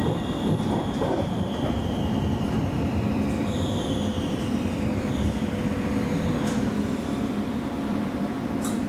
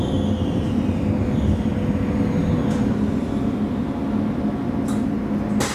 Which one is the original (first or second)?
second